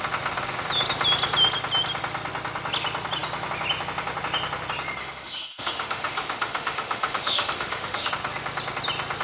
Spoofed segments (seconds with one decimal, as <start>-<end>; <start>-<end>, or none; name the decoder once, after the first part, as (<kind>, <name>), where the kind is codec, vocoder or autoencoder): 5.0-8.1 (autoencoder, DAC-VAE)